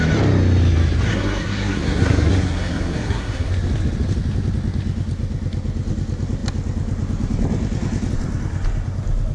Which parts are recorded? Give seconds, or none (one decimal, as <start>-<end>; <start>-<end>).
0.0-1.1; 3.5-9.3